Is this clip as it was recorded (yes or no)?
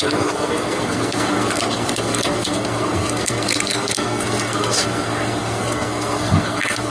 no